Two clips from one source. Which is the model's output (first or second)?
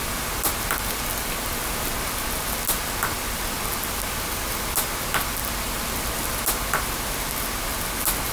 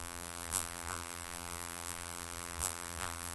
second